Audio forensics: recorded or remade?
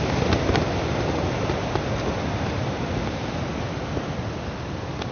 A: recorded